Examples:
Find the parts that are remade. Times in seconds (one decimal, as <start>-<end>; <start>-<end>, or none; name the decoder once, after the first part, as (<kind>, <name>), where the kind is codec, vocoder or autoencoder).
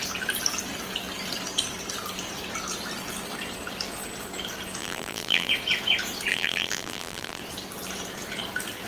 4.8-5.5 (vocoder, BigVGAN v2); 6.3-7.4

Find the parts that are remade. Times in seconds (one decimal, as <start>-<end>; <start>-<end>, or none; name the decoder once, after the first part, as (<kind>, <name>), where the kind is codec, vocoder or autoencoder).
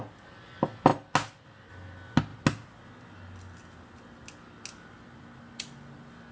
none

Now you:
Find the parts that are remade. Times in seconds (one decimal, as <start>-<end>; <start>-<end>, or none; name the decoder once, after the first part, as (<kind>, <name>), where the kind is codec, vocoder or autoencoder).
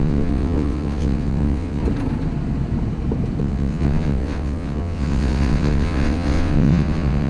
0.0-1.8 (vocoder, WaveNeXt); 3.4-7.3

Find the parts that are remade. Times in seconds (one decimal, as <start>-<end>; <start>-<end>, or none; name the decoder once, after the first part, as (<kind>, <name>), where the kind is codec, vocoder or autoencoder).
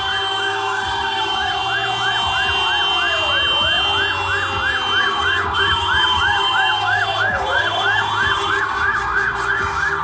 0.0-1.6 (codec, DAC); 5.0-10.0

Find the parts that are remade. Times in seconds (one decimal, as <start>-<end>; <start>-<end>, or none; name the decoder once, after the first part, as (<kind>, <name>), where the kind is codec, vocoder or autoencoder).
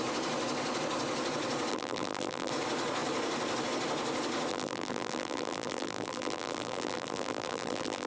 1.7-2.5 (vocoder, BigVGAN v2); 4.5-8.1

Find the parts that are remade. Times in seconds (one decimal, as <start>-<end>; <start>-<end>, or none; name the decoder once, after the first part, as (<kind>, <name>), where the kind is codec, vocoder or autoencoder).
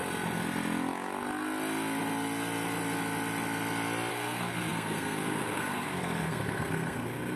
4.1-7.4 (codec, SNAC)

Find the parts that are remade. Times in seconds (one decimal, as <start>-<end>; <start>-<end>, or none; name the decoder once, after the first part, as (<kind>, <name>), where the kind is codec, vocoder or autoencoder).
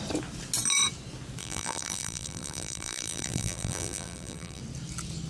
1.4-4.6 (vocoder, BigVGAN v2)